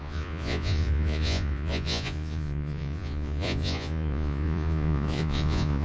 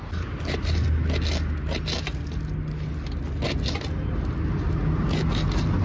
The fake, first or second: first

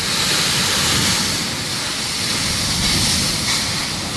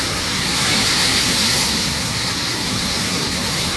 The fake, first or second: second